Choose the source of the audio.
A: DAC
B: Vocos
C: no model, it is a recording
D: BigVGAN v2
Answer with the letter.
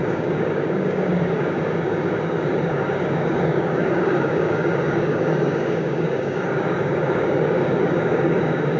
A